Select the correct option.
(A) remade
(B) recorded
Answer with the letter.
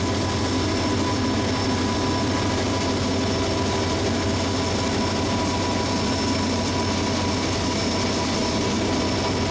B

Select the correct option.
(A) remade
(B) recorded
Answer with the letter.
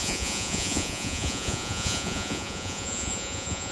A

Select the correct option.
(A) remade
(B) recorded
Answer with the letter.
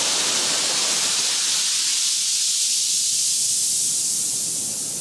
B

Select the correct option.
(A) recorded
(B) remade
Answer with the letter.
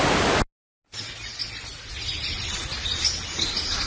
A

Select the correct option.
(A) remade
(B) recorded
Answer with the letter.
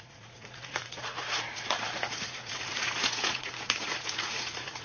A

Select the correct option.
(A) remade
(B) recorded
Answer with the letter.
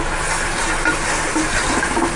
B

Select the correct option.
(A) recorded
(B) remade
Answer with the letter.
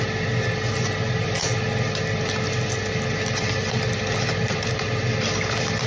A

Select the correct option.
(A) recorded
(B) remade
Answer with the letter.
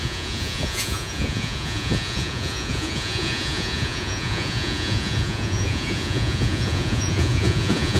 B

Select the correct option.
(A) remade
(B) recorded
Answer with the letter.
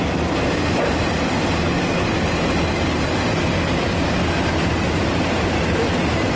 B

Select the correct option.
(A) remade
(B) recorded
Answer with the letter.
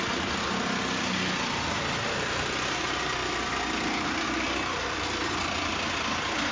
B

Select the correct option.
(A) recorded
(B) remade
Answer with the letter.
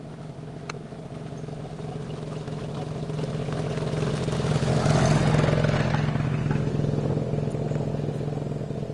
A